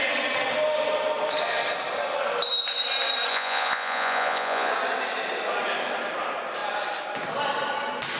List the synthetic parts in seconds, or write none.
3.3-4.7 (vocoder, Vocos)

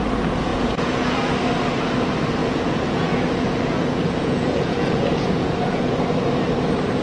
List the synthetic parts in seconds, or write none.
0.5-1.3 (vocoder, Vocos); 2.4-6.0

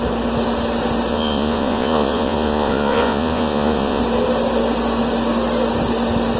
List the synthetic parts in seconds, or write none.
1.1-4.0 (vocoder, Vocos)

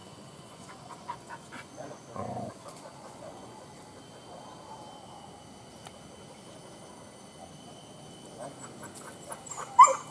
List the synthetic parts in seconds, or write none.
0.0-3.7 (vocoder, Vocos)

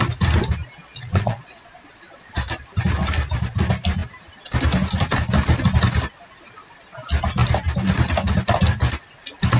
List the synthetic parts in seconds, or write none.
0.9-2.3 (vocoder, Vocos)

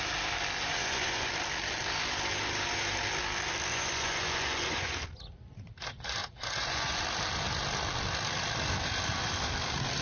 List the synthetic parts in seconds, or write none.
0.7-1.3 (vocoder, Vocos); 3.7-4.9; 6.2-7.0

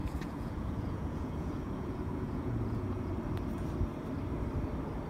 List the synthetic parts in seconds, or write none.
0.0-3.1 (vocoder, Vocos)

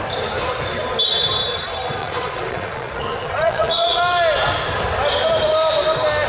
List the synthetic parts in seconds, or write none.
2.0-4.0 (vocoder, Vocos)